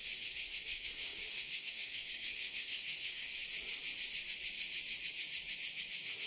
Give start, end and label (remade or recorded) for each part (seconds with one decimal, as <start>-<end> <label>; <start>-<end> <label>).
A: 0.0-3.3 remade; 3.3-6.3 recorded